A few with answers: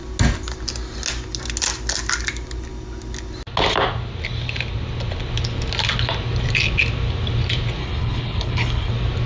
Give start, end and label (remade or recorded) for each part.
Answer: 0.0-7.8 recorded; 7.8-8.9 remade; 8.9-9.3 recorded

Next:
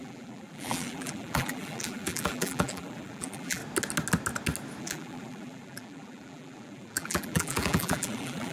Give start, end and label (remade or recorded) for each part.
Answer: 0.0-3.6 remade; 3.6-4.8 recorded; 4.8-8.5 remade

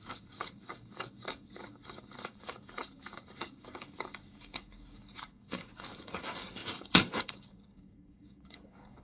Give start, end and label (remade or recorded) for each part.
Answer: 0.0-9.0 remade